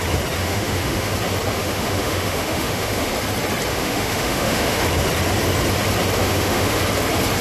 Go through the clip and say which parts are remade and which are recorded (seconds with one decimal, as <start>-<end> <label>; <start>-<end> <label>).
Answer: 0.0-0.4 recorded; 0.4-1.1 remade; 1.1-1.5 recorded; 1.5-3.1 remade; 3.1-3.7 recorded; 3.7-4.8 remade; 4.8-6.2 recorded; 6.2-6.8 remade; 6.8-7.4 recorded